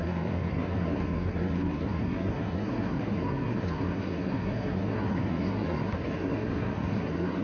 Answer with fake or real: fake